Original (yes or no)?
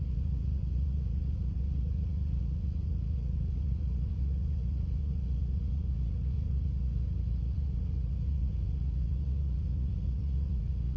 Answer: no